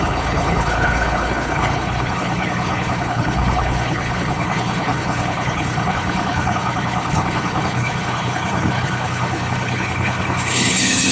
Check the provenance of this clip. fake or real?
fake